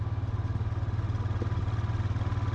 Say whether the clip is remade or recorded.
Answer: recorded